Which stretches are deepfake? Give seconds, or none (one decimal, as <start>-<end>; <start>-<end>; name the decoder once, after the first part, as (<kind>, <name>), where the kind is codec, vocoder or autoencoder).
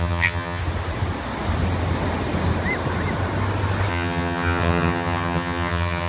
0.0-0.6 (vocoder, HiFi-GAN); 3.9-6.1